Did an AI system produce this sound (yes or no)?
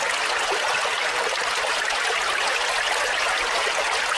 no